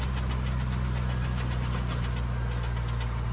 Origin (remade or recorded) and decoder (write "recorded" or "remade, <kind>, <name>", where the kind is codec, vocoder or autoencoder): recorded